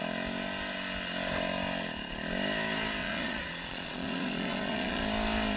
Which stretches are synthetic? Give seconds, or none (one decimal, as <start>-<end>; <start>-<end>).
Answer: 3.0-5.0